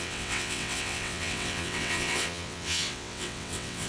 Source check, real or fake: fake